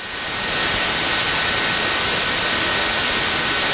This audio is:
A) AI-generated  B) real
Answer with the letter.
B